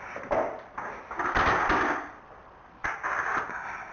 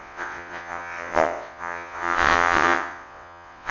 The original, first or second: first